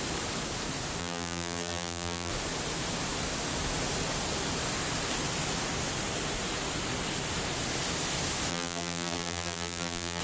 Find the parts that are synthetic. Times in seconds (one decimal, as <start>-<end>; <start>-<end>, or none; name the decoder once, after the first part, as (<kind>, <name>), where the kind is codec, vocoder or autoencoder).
1.0-2.3 (vocoder, BigVGAN v2); 8.5-10.2